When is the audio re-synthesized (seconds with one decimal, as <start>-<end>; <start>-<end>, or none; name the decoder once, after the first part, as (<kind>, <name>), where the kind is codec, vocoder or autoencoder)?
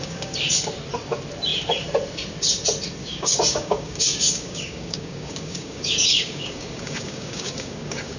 0.0-0.5 (codec, DAC); 3.0-8.2